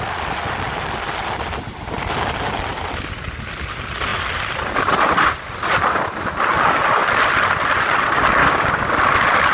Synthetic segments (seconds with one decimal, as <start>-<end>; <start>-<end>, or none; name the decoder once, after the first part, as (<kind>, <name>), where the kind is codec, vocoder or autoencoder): 8.4-8.9 (codec, DAC)